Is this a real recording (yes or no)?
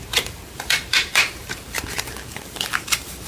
no